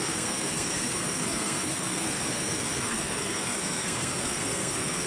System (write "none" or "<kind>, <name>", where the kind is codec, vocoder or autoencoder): codec, SNAC